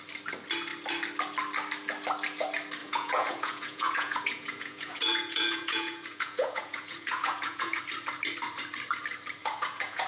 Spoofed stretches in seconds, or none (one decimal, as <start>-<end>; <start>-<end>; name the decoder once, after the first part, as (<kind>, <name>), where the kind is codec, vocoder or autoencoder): 2.8-7.8 (vocoder, Vocos); 9.4-10.1